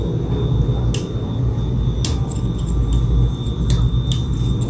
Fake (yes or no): no